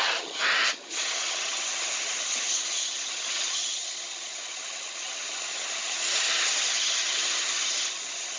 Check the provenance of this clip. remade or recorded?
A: remade